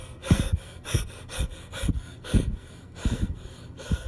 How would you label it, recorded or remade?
remade